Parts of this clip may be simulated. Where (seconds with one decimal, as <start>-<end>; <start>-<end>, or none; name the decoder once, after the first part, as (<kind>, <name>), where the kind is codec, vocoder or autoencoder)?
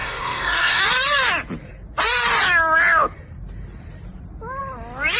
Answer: 0.0-0.8 (codec, SNAC)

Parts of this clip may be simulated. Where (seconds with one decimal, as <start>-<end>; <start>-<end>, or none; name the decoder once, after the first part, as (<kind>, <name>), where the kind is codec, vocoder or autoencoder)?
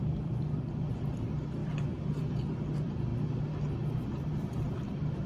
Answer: 0.0-3.1 (vocoder, BigVGAN v2); 4.1-5.3